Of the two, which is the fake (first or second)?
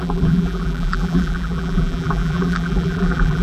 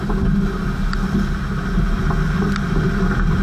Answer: first